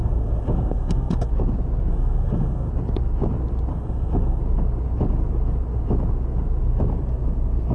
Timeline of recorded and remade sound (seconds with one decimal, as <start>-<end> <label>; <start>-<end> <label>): 0.0-1.3 remade; 1.3-1.9 recorded; 1.9-2.7 remade; 2.7-3.7 recorded; 3.7-4.4 remade; 4.4-7.7 recorded